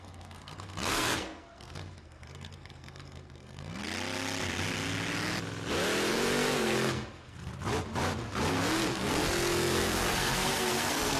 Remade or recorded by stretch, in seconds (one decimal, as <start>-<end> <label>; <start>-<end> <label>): 0.0-3.8 remade; 3.8-6.1 recorded; 6.1-7.5 remade; 7.5-8.5 recorded; 8.5-11.2 remade